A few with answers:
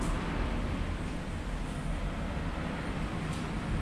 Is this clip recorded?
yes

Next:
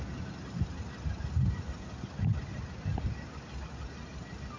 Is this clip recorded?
yes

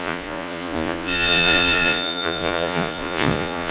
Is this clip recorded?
no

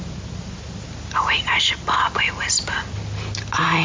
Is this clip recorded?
yes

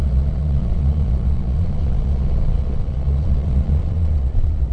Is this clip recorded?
no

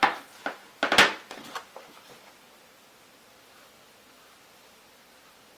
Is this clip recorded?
yes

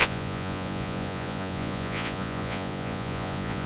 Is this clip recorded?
no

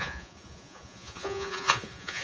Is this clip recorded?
no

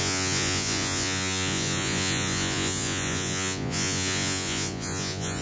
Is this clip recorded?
no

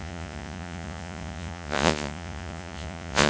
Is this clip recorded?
no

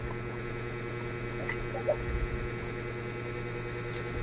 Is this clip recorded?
yes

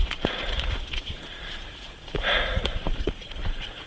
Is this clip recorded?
no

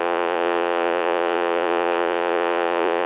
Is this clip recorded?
no